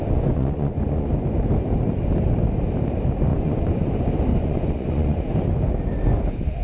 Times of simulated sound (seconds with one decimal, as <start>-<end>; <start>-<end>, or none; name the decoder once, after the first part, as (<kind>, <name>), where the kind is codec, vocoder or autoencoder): 0.0-1.1 (vocoder, Vocos); 3.3-3.9; 4.3-5.3